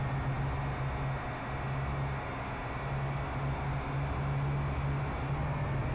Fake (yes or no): no